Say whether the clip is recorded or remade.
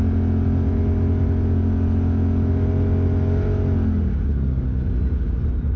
recorded